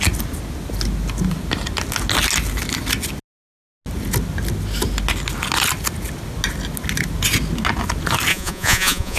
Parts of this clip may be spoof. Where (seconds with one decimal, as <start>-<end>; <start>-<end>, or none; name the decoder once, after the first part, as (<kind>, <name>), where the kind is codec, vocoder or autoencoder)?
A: 8.3-9.2 (vocoder, Vocos)